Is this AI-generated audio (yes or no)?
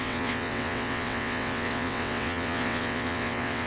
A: yes